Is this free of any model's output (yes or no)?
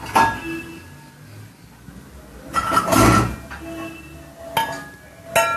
yes